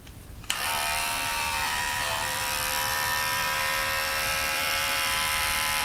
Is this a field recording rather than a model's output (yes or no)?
no